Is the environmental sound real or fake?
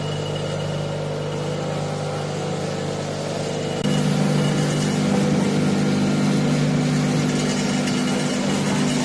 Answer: real